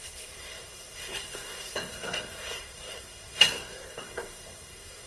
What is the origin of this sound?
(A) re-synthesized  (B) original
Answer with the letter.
A